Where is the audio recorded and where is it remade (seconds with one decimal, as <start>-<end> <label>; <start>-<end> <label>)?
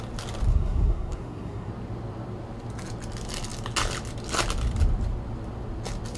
0.0-0.5 recorded; 0.5-1.7 remade; 1.7-6.2 recorded